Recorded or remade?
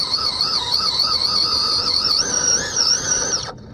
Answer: remade